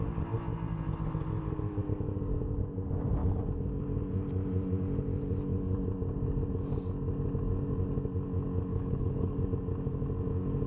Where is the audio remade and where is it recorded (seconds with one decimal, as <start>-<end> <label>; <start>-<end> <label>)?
0.0-8.7 recorded; 8.7-9.4 remade; 9.4-10.7 recorded